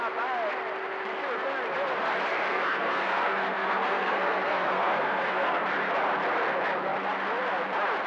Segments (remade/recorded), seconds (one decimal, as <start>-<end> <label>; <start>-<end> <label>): 0.0-2.3 recorded; 2.3-5.6 remade; 5.6-8.1 recorded